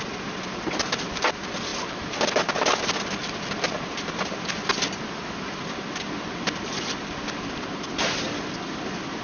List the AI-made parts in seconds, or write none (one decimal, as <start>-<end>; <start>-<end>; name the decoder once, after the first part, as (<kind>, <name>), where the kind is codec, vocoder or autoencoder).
none